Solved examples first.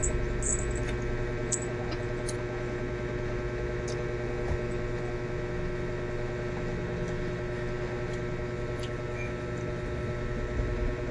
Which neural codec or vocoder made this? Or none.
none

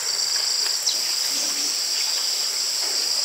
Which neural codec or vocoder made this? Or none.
none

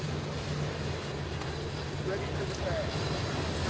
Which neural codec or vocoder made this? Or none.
none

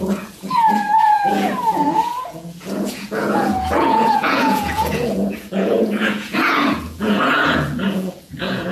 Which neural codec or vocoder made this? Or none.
vocoder, Vocos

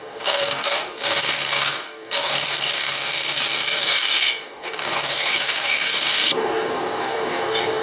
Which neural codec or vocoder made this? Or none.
codec, DAC